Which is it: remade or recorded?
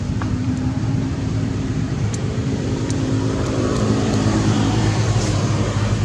remade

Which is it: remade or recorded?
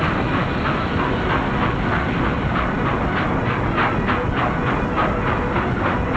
recorded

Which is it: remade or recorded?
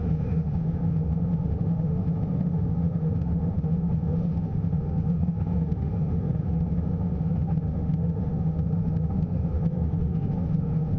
remade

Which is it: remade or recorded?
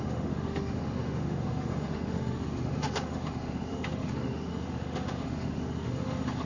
remade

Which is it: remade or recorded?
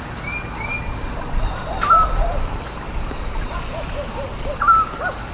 recorded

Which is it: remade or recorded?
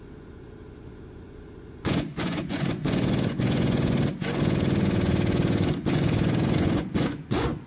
remade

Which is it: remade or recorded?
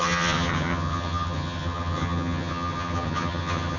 remade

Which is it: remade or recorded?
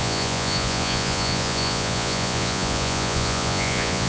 remade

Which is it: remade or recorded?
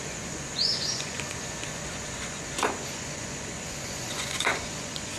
remade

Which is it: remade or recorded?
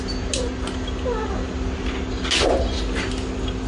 recorded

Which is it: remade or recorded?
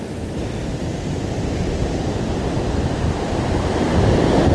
recorded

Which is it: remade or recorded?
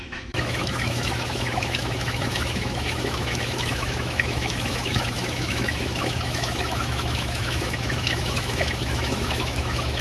remade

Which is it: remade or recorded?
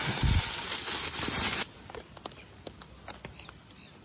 recorded